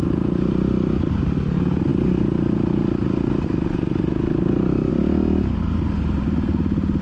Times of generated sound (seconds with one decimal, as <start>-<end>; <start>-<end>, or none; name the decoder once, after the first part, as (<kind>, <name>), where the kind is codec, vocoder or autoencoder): none